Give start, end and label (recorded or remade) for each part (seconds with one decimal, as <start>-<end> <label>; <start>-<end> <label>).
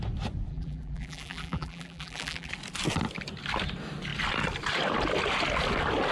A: 0.0-0.5 recorded; 0.5-2.5 remade; 2.5-6.1 recorded